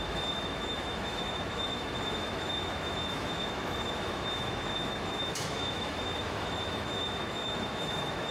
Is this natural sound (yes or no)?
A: no